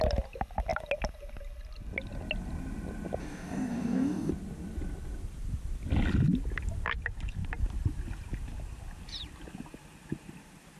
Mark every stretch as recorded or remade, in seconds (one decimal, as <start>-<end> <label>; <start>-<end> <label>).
0.0-3.2 recorded; 3.2-4.3 remade; 4.3-10.8 recorded